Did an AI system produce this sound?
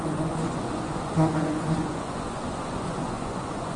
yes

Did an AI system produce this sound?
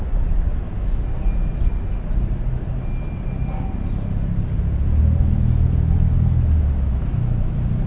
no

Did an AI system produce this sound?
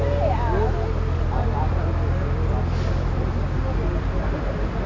no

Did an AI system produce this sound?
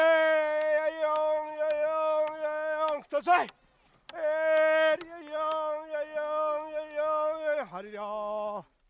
no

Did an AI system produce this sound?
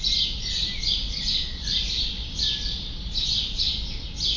no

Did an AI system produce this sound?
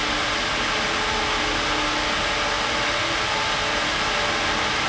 no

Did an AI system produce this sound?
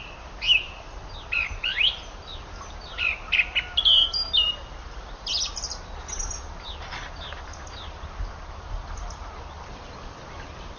no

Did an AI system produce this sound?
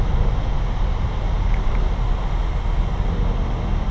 no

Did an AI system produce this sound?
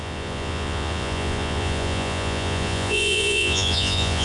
yes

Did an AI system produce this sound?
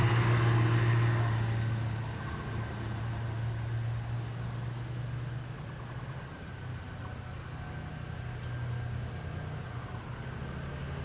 no